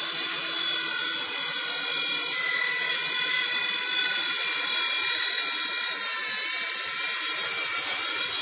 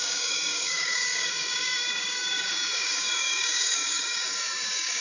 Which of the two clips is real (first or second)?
first